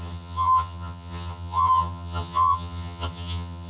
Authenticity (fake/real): fake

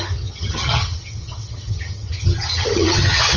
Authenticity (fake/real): fake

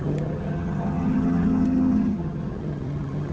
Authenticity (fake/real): fake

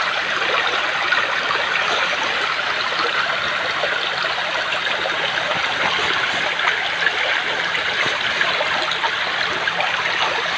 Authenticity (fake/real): real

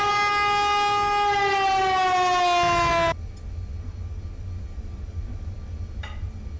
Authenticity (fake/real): real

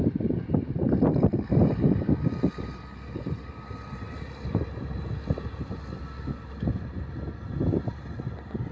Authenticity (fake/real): real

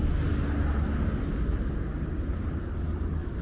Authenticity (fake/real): real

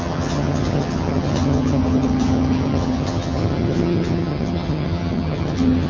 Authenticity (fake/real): fake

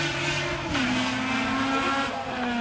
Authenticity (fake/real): real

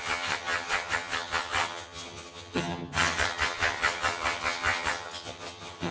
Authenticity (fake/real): fake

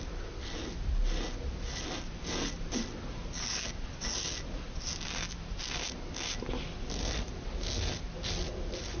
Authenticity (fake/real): real